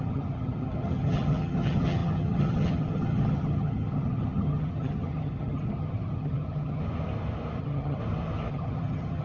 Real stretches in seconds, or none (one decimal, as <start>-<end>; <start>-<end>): 6.8-7.6; 8.0-8.5